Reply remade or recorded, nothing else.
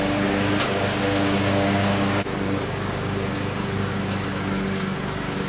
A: remade